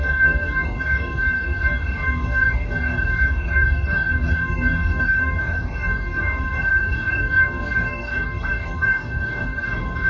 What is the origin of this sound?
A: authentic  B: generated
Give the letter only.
B